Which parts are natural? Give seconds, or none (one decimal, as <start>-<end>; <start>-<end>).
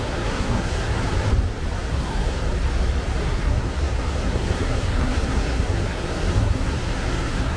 1.0-1.9; 2.4-3.2